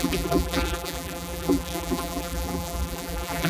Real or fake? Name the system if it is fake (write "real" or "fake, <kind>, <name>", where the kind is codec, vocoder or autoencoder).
fake, vocoder, BigVGAN v2